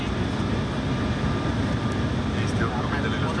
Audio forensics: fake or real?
real